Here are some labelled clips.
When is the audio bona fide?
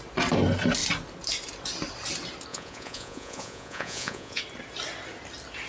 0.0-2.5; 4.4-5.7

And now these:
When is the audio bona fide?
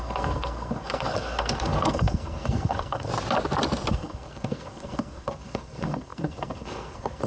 3.1-3.9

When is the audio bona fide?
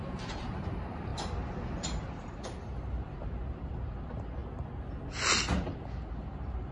1.1-1.8; 4.4-6.1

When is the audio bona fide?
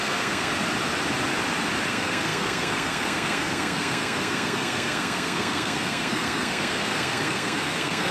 0.5-1.9